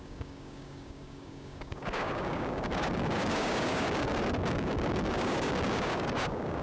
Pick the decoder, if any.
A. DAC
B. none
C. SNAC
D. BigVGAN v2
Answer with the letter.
A